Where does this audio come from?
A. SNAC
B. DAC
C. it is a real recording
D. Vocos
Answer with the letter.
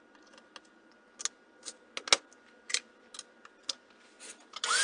C